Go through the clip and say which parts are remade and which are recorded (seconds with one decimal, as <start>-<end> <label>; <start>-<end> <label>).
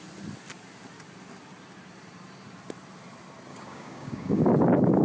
0.0-3.5 recorded; 3.5-4.4 remade; 4.4-5.0 recorded